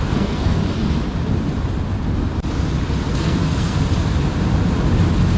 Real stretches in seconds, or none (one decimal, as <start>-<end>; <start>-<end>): 0.6-3.1; 3.8-5.4